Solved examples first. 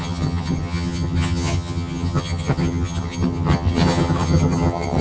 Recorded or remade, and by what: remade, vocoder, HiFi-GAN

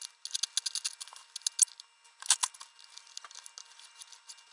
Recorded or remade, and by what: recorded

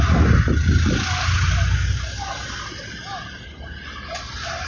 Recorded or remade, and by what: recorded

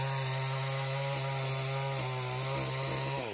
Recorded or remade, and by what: recorded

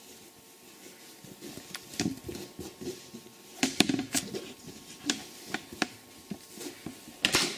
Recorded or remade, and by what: recorded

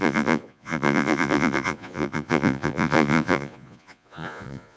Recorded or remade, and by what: remade, vocoder, Vocos